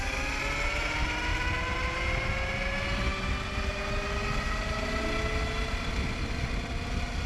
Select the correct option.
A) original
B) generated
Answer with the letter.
A